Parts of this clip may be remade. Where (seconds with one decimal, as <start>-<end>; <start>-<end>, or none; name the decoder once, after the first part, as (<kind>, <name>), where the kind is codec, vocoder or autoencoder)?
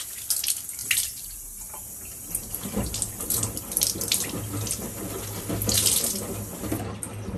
0.8-3.6 (vocoder, BigVGAN v2)